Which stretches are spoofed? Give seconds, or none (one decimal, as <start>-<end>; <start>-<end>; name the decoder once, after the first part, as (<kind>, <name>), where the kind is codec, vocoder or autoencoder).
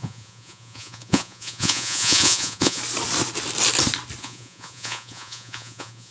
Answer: 0.0-2.8 (vocoder, Vocos); 4.2-6.1